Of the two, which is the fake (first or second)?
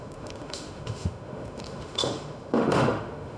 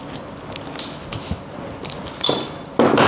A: first